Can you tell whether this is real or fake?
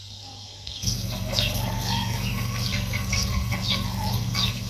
fake